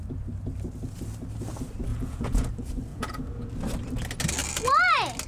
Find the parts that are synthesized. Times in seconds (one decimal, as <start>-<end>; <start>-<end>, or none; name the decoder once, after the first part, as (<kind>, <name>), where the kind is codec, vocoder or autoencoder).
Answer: 1.9-2.5 (vocoder, Vocos); 2.9-3.5